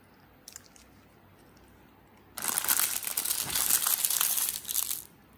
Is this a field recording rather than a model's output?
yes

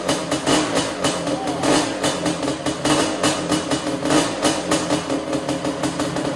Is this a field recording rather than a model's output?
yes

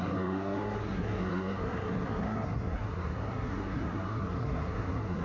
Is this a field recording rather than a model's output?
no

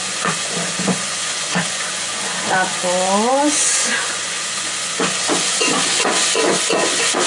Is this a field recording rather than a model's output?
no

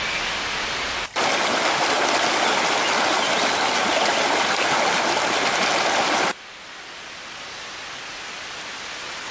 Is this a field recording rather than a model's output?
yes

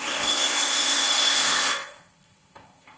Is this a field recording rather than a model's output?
no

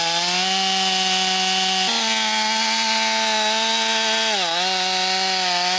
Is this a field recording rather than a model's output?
yes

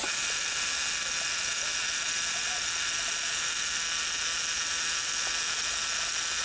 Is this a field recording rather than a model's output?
yes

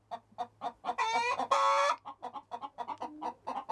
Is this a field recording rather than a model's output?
yes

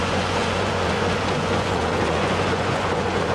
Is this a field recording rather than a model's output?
no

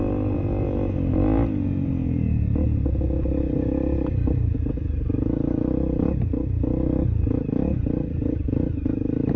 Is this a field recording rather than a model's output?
yes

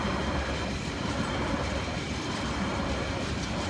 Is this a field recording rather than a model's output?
yes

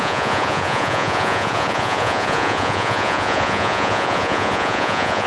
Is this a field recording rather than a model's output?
no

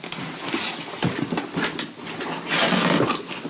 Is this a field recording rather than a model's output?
yes